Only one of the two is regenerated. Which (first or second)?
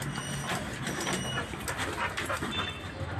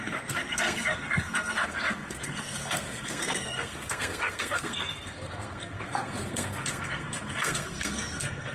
second